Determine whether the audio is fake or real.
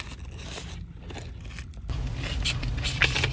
real